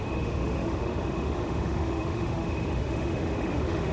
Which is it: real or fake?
fake